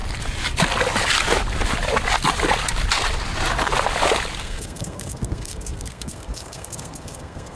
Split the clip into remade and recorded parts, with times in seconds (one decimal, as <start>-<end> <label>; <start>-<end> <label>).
0.0-4.4 recorded; 4.4-7.6 remade